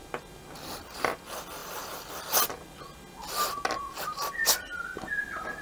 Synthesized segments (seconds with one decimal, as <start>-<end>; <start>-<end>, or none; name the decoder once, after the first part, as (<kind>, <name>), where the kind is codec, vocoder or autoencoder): none